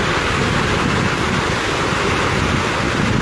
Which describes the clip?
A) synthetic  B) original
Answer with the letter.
B